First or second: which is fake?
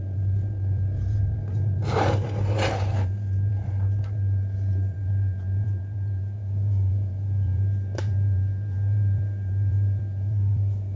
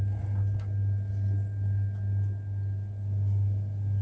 first